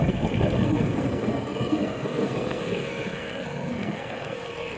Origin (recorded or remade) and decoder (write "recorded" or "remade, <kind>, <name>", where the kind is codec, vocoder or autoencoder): remade, codec, SNAC